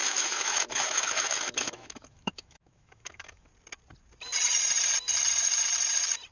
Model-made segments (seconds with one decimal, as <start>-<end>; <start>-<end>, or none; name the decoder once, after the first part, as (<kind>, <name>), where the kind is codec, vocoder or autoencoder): 0.0-3.5 (autoencoder, DAC-VAE)